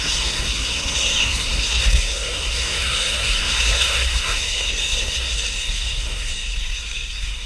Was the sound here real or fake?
fake